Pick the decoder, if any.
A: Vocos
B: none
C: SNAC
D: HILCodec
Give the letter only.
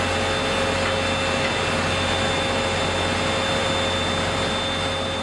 B